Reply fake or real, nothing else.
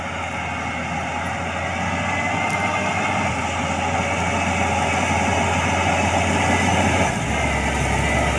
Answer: real